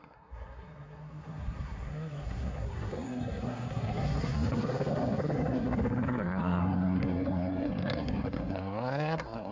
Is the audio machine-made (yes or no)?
yes